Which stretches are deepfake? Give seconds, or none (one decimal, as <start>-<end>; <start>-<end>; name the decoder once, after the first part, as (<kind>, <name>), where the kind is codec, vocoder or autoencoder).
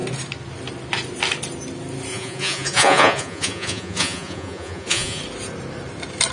2.1-5.2 (vocoder, Vocos)